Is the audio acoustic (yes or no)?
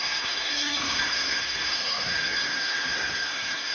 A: no